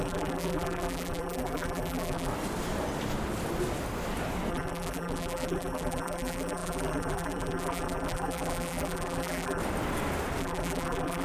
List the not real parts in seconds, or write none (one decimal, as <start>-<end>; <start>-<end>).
0.0-2.3; 4.5-9.6; 10.4-11.2